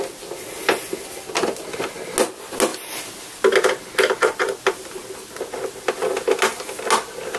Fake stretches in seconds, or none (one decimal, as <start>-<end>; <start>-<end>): none